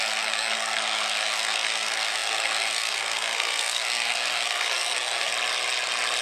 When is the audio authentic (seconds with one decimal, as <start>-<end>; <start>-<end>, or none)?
5.3-6.2